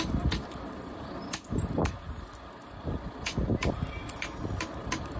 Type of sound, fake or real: real